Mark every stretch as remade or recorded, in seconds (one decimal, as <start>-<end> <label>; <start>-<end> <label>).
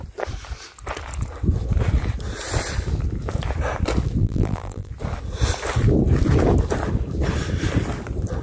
0.0-4.2 recorded; 4.2-4.9 remade; 4.9-8.4 recorded